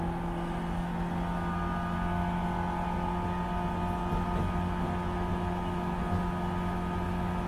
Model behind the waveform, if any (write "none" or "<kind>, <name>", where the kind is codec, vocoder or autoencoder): none